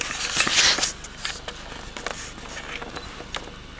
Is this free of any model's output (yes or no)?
yes